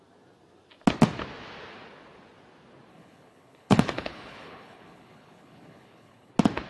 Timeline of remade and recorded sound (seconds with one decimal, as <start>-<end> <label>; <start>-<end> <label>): 0.0-2.9 recorded; 2.9-6.3 remade; 6.3-6.7 recorded